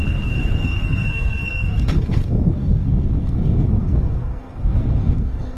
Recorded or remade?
remade